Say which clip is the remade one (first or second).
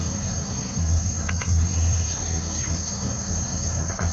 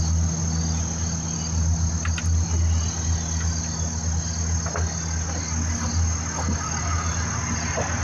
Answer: first